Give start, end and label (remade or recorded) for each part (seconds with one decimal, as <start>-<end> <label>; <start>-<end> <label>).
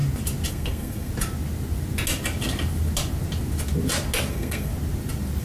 0.0-0.5 recorded; 0.5-1.1 remade; 1.1-4.3 recorded; 4.3-4.7 remade; 4.7-5.4 recorded